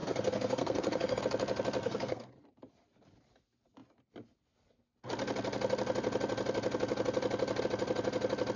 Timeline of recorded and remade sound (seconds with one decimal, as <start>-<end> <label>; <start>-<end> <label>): 0.0-1.2 remade; 1.2-1.8 recorded; 1.8-2.3 remade; 2.3-8.6 recorded